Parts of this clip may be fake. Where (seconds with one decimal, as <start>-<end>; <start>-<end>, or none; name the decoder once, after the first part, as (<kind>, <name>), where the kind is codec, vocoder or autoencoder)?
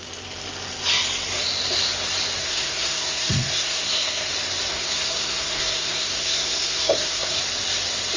2.4-4.3 (codec, SNAC); 4.7-7.4